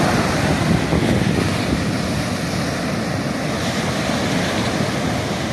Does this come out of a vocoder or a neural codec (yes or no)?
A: no